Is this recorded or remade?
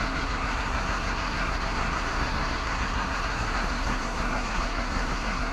remade